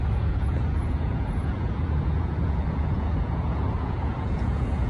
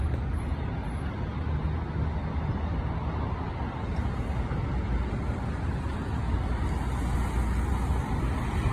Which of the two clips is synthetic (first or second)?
first